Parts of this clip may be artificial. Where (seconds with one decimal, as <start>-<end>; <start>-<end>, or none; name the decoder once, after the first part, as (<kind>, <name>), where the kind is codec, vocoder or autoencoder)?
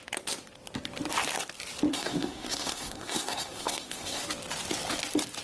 1.9-4.2 (codec, SNAC)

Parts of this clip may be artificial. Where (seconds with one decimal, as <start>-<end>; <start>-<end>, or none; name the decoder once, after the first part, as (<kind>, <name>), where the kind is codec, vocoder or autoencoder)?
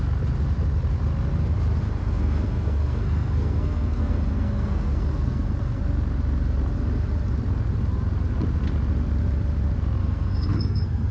2.0-5.8 (codec, SNAC); 10.0-11.1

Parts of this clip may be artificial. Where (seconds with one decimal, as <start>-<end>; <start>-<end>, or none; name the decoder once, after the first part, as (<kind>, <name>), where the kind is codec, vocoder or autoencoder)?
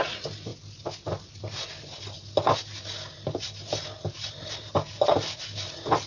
none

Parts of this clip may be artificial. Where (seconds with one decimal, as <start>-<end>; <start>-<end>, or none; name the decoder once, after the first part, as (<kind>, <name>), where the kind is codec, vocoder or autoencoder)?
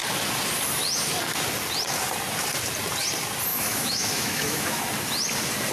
3.5-4.8 (autoencoder, DAC-VAE)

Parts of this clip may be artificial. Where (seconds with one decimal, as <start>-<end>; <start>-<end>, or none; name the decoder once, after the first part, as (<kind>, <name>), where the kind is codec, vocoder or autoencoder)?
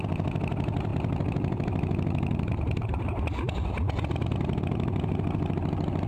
0.0-6.1 (vocoder, BigVGAN v2)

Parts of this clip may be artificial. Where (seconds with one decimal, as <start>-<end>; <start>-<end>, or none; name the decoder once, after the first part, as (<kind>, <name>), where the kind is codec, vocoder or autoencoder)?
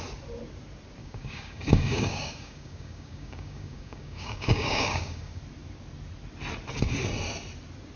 1.0-5.4 (codec, DAC)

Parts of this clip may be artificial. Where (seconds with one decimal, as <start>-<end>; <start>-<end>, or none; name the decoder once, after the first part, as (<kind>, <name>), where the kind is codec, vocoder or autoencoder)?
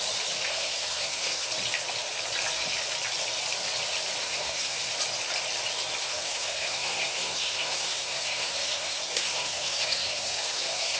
0.5-1.5 (codec, SNAC); 4.2-4.9; 6.0-11.0